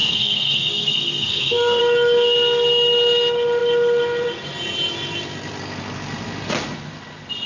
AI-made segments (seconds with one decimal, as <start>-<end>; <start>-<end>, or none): 0.0-1.8